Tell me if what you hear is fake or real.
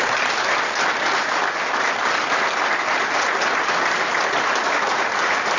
real